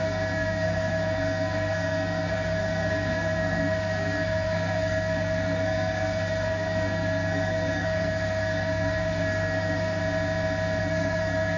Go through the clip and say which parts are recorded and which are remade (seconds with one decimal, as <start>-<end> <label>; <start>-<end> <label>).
0.0-10.0 remade; 10.0-10.8 recorded; 10.8-11.6 remade

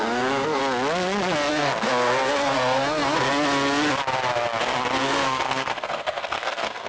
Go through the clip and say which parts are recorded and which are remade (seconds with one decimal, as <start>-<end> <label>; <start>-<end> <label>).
0.0-0.6 remade; 0.6-1.5 recorded; 1.5-3.3 remade; 3.3-5.0 recorded; 5.0-6.9 remade

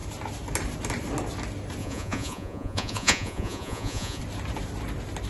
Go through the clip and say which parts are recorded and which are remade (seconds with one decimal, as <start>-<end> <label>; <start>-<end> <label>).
0.0-1.8 recorded; 1.8-4.2 remade; 4.2-5.3 recorded

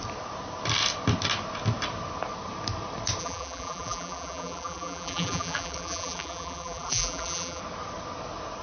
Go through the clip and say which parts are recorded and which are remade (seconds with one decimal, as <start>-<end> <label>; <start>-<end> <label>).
0.0-3.2 recorded; 3.2-7.6 remade; 7.6-8.6 recorded

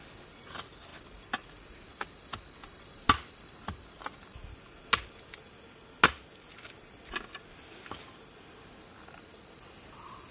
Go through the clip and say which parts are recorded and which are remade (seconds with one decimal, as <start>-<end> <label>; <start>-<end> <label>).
0.0-10.3 recorded

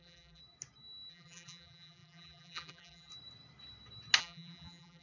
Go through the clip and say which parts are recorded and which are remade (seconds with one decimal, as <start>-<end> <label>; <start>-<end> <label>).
0.0-0.4 remade; 0.4-1.1 recorded; 1.1-3.1 remade; 3.1-4.2 recorded; 4.2-5.0 remade

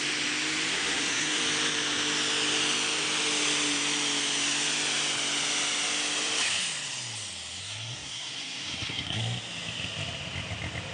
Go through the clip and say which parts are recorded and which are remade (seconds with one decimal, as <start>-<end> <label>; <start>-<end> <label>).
0.0-0.7 recorded; 0.7-1.4 remade; 1.4-7.6 recorded; 7.6-9.2 remade; 9.2-10.9 recorded